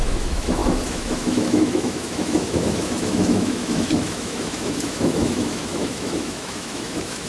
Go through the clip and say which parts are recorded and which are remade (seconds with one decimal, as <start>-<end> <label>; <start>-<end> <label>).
0.0-7.3 remade